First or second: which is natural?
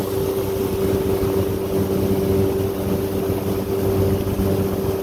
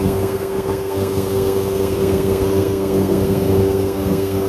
first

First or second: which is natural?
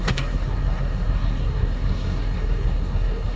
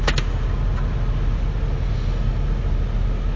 second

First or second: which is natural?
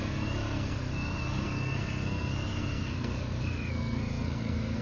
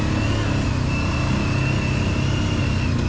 second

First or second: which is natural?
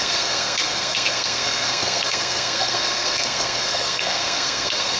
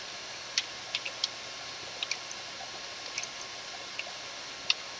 second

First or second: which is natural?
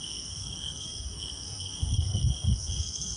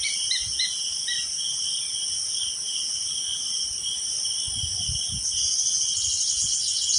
second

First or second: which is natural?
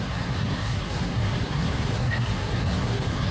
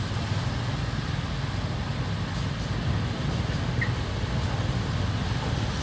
second